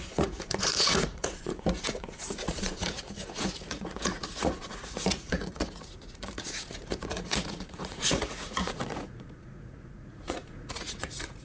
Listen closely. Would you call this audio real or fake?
fake